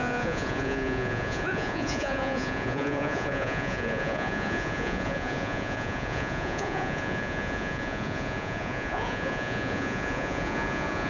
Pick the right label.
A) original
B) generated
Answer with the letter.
B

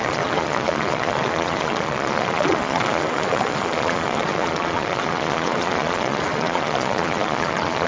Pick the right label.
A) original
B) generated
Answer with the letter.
B